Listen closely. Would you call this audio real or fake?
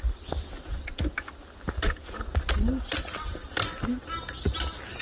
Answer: real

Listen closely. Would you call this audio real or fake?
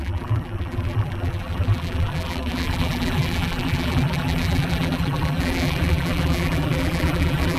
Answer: fake